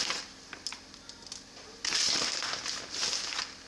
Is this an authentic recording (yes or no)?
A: yes